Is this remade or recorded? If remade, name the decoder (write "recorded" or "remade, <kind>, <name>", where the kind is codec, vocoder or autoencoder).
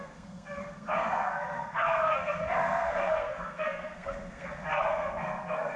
remade, codec, SNAC